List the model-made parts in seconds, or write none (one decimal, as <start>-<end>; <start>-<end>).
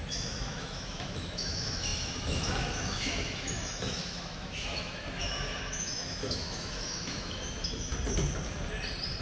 0.0-7.9